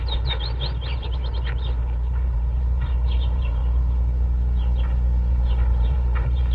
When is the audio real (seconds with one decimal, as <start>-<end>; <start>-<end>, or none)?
1.2-1.8; 3.6-5.3